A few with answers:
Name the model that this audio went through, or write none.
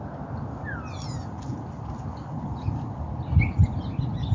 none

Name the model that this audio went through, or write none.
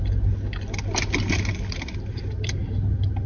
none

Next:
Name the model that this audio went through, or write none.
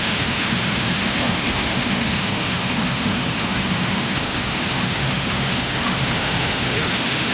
autoencoder, DAC-VAE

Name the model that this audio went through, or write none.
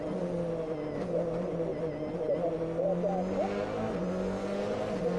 none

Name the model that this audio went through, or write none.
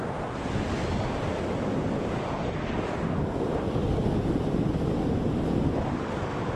none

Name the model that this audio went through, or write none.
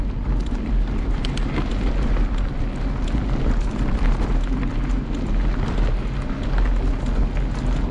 none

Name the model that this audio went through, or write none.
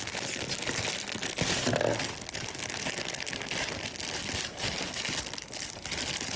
none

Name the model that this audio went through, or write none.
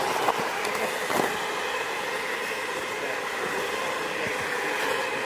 none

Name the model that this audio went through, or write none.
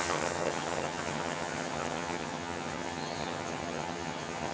vocoder, HiFi-GAN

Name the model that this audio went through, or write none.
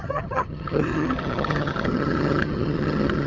vocoder, HiFi-GAN